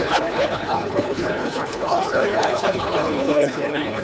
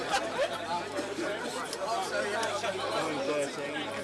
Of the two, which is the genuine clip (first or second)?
second